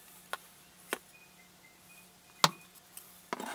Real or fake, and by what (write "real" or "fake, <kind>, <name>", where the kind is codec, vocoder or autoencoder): real